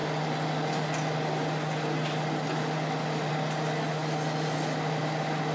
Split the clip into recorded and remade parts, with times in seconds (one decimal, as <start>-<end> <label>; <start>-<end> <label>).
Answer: 0.0-5.5 recorded